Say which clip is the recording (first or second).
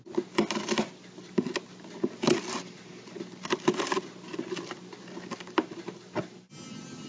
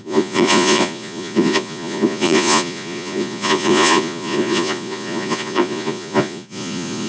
first